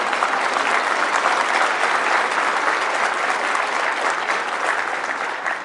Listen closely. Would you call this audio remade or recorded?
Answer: recorded